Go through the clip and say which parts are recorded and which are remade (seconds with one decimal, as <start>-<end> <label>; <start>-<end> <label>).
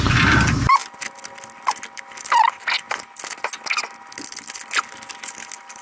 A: 0.0-5.8 recorded